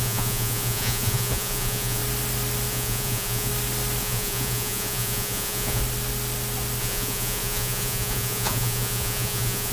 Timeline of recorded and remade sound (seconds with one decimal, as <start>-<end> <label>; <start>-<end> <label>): 0.0-2.0 remade; 2.0-2.7 recorded; 2.7-3.5 remade; 3.5-4.0 recorded; 4.0-5.8 remade; 5.8-6.8 recorded; 6.8-9.7 remade